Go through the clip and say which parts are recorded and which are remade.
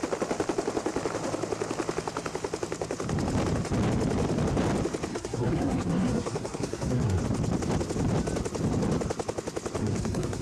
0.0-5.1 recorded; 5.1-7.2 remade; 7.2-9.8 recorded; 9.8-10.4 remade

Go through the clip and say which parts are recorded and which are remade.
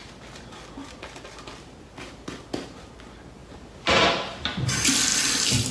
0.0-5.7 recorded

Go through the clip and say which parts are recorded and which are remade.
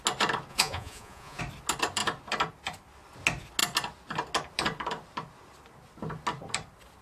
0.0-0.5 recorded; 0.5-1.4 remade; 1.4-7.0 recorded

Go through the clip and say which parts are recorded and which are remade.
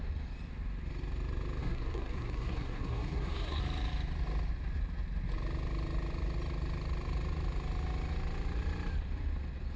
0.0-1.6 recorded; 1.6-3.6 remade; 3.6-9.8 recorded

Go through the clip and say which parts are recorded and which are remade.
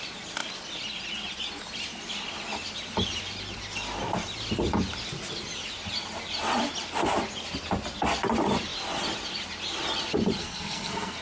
0.0-10.4 recorded; 10.4-11.2 remade